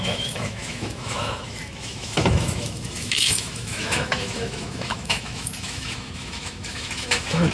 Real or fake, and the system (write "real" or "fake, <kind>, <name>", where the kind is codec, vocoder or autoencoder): fake, autoencoder, DAC-VAE